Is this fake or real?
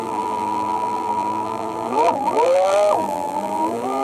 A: fake